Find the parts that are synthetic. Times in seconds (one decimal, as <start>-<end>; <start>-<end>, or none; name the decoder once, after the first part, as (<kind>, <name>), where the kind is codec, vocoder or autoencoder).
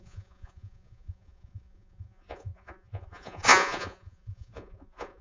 0.0-5.2 (vocoder, Vocos)